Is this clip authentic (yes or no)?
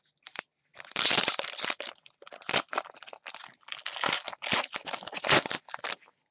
yes